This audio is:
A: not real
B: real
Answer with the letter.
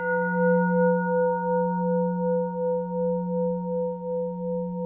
B